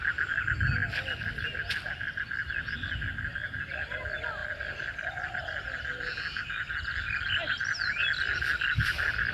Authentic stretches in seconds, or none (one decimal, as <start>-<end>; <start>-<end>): 0.0-4.4